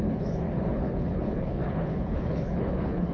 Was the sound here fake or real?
fake